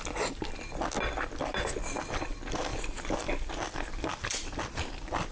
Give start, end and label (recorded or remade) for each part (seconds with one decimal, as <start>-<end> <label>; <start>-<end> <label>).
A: 0.0-5.3 recorded